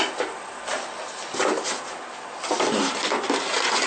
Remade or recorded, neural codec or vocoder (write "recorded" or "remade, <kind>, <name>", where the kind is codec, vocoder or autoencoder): recorded